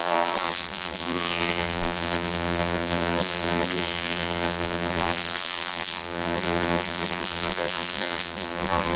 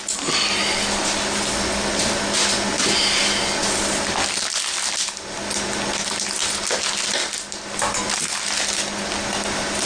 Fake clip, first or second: first